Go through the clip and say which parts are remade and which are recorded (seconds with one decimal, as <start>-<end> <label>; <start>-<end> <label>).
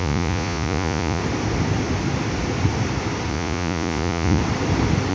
0.0-1.2 remade; 1.2-3.3 recorded; 3.3-4.4 remade; 4.4-5.1 recorded